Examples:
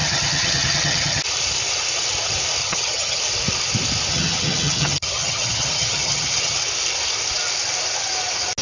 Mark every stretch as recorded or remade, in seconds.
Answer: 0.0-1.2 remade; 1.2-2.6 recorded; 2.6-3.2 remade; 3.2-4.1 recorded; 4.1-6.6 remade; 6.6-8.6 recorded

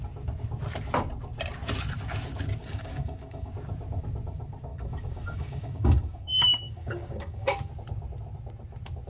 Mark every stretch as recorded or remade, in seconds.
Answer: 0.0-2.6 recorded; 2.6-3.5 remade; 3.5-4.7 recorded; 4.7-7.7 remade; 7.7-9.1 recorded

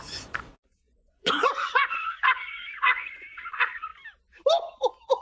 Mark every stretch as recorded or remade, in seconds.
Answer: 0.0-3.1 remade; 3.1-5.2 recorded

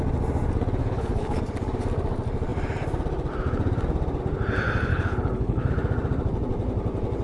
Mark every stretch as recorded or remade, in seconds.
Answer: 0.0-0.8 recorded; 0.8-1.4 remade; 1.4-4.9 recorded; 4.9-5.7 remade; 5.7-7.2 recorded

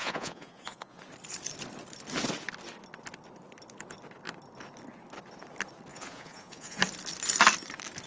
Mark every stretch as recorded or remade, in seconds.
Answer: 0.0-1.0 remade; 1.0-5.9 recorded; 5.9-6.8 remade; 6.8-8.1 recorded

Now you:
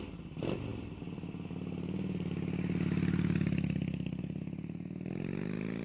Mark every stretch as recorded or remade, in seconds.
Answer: 0.0-5.8 recorded

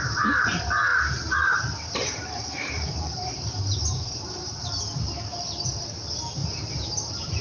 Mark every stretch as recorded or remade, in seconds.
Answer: 0.0-0.9 recorded; 0.9-4.8 remade; 4.8-6.4 recorded; 6.4-7.4 remade